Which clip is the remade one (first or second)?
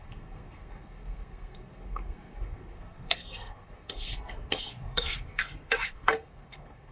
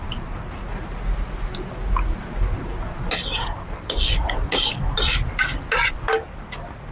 first